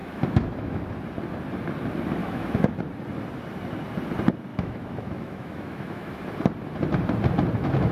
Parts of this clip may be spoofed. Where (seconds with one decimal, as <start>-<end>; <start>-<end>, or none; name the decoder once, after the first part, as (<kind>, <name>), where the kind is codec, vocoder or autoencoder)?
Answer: 0.0-0.8 (autoencoder, DAC-VAE); 2.2-2.8; 4.5-6.2